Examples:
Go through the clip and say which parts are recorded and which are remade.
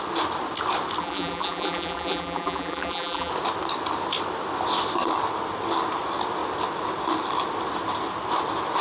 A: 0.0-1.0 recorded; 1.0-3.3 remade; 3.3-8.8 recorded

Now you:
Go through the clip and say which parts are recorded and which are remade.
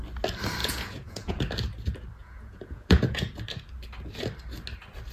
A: 0.0-0.6 recorded; 0.6-1.4 remade; 1.4-2.2 recorded; 2.2-3.3 remade; 3.3-5.1 recorded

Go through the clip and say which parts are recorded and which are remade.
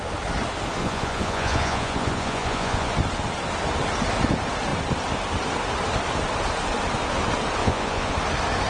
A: 0.0-0.8 recorded; 0.8-2.9 remade; 2.9-7.6 recorded; 7.6-8.1 remade; 8.1-8.7 recorded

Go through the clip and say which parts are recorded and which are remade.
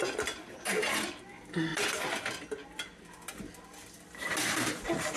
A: 0.0-5.2 recorded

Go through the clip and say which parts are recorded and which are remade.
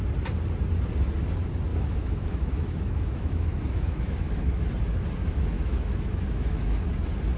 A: 0.0-1.7 recorded; 1.7-4.6 remade; 4.6-5.2 recorded; 5.2-6.9 remade; 6.9-7.4 recorded